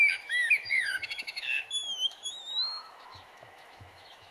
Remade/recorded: remade